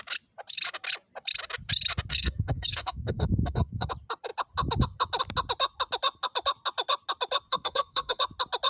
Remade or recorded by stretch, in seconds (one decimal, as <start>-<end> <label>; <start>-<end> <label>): 0.0-2.1 recorded; 2.1-3.9 remade; 3.9-7.5 recorded; 7.5-8.2 remade; 8.2-8.7 recorded